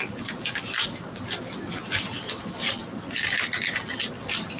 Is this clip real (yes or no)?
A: yes